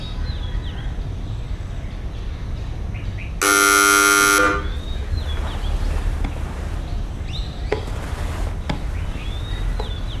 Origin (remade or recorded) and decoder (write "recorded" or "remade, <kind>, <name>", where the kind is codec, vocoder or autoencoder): recorded